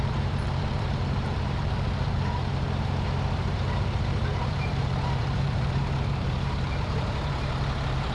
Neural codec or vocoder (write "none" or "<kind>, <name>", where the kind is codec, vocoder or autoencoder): vocoder, BigVGAN v2